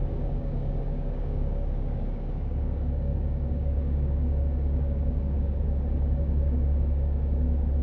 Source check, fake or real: fake